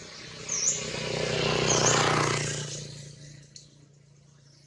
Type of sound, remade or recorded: recorded